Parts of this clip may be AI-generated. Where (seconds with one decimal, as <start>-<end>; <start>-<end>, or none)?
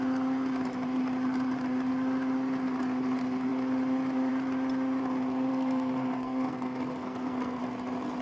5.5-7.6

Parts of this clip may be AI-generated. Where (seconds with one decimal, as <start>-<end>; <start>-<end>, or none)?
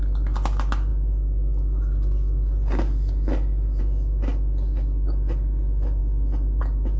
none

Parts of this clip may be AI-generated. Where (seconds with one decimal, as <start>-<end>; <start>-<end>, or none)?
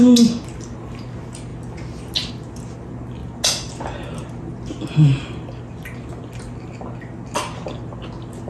none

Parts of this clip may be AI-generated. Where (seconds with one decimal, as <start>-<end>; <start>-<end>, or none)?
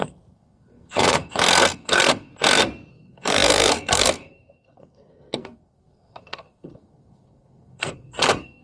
0.0-2.3; 2.9-8.6